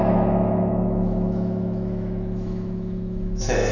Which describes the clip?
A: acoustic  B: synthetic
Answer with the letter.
B